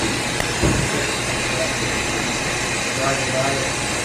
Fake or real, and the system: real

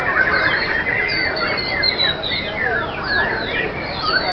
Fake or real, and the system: real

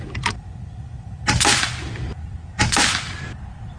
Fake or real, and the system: real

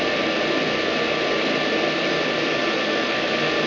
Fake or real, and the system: real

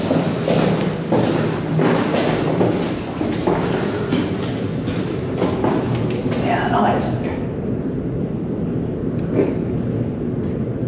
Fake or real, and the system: real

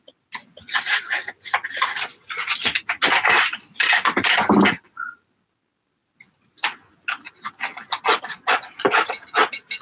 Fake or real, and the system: real